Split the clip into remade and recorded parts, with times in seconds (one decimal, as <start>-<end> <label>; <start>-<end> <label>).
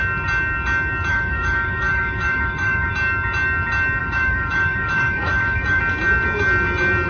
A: 0.0-1.1 recorded; 1.1-2.9 remade; 2.9-4.0 recorded; 4.0-5.8 remade; 5.8-7.1 recorded